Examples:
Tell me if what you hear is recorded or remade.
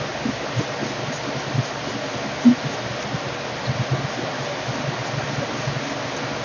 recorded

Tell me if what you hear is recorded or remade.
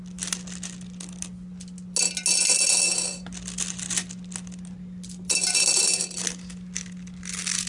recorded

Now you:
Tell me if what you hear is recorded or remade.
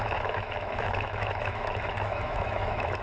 remade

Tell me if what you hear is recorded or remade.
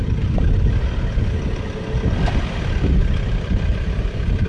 recorded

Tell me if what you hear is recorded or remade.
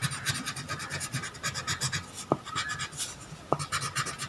recorded